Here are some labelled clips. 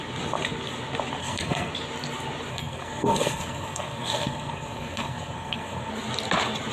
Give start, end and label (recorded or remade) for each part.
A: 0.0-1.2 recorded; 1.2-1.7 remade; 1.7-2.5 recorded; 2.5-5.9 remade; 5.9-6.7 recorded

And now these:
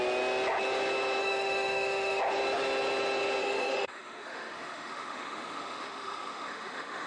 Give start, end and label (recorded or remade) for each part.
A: 0.0-1.2 recorded; 1.2-2.2 remade; 2.2-3.4 recorded; 3.4-7.1 remade

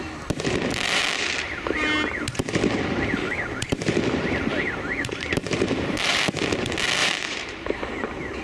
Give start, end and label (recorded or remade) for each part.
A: 0.0-4.5 recorded; 4.5-6.3 remade; 6.3-7.0 recorded; 7.0-8.4 remade